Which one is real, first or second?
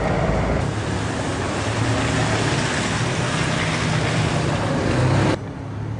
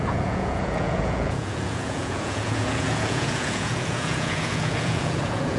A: first